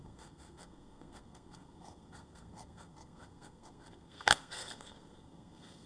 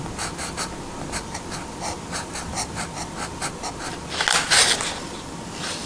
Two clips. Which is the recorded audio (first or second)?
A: second